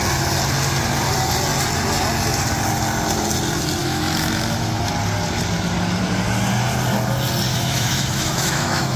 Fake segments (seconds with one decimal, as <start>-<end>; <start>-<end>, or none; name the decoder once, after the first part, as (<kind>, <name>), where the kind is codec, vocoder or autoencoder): 3.8-4.9 (autoencoder, DAC-VAE); 7.5-9.0